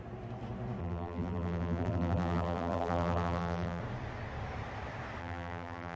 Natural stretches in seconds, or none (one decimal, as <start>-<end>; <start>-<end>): 0.0-0.8; 3.8-5.2